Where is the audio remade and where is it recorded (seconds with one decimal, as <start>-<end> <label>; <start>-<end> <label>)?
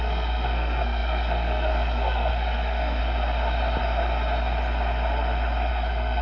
0.0-3.0 remade; 3.0-5.7 recorded; 5.7-6.2 remade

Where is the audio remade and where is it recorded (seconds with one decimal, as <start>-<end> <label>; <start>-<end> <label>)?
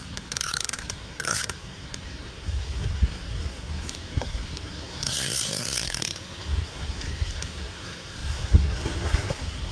0.0-9.7 remade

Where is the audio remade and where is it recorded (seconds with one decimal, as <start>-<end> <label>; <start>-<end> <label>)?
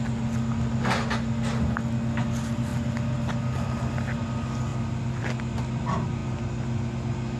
0.0-7.4 recorded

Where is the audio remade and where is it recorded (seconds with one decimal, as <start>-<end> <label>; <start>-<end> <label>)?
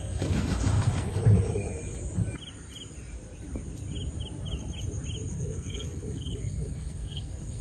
0.0-1.2 remade; 1.2-5.3 recorded; 5.3-7.6 remade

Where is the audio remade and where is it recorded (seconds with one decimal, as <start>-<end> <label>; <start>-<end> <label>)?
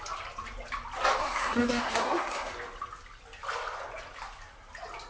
0.0-1.2 recorded; 1.2-2.5 remade; 2.5-5.1 recorded